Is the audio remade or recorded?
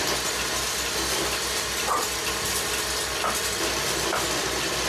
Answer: recorded